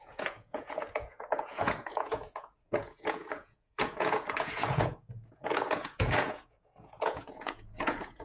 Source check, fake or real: fake